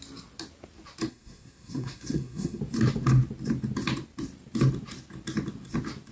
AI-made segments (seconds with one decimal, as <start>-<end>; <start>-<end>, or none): 1.1-2.6

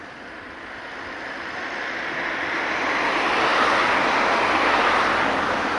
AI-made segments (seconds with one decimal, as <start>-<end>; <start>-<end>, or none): none

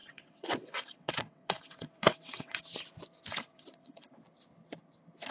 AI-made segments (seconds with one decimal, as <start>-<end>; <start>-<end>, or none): 0.0-2.6; 3.3-4.2

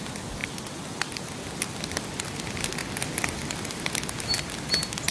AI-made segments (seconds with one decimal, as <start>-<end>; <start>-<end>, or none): none

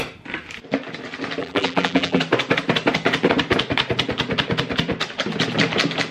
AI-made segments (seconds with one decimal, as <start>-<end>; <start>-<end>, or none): 1.4-2.2

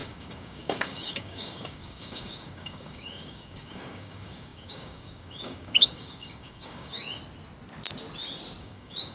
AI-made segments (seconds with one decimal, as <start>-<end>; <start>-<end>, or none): 0.0-7.2; 8.6-9.1

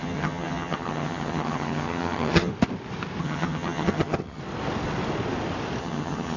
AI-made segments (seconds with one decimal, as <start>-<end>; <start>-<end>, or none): 0.0-2.5; 3.2-4.4; 5.8-6.4